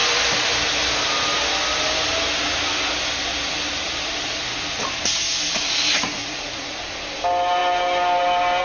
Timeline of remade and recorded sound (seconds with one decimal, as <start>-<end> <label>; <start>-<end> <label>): 0.0-6.2 recorded; 6.2-6.8 remade; 6.8-8.6 recorded